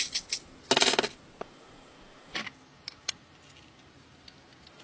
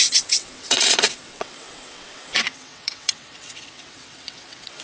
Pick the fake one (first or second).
second